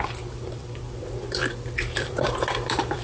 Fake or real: fake